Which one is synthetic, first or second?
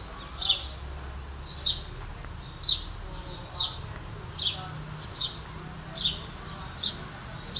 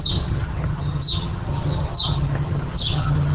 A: second